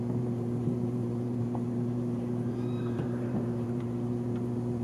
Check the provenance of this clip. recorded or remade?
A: remade